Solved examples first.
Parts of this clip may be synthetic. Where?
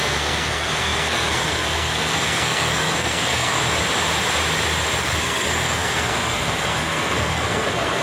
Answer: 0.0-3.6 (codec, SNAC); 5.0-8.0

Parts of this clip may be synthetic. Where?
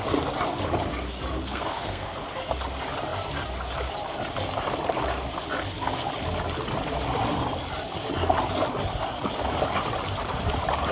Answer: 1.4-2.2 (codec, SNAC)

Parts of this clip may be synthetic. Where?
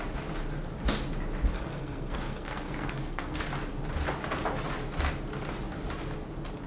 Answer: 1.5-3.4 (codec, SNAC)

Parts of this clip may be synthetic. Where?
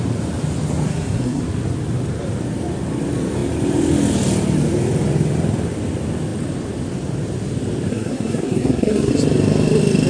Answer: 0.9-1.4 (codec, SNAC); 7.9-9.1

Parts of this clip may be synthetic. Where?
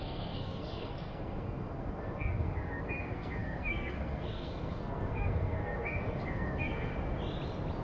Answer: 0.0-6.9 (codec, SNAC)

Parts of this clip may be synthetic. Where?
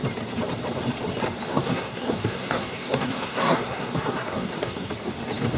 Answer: 1.5-4.9 (codec, SNAC)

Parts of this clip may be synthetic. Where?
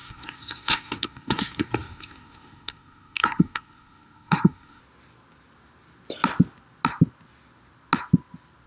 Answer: 0.0-4.8 (codec, SNAC)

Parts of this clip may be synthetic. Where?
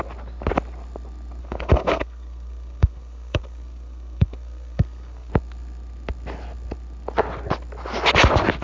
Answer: 1.4-5.3 (codec, SNAC)